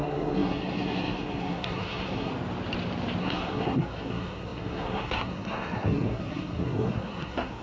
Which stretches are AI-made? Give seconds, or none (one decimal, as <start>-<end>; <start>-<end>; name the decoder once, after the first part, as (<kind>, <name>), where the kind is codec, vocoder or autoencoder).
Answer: 0.0-2.3 (codec, SNAC); 3.2-7.6